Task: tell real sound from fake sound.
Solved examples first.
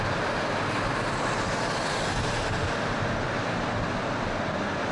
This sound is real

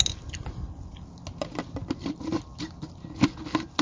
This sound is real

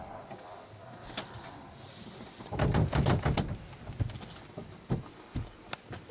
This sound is real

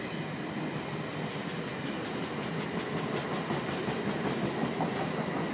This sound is real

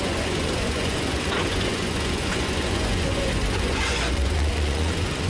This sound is fake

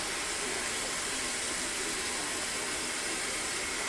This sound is real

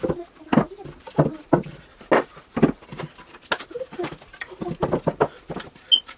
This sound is real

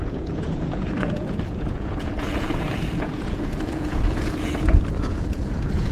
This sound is fake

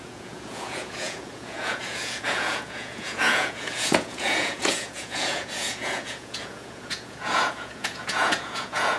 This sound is fake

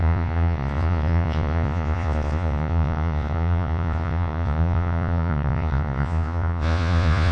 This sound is fake